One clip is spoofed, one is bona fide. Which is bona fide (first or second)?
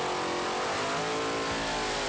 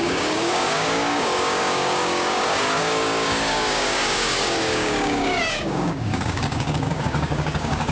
first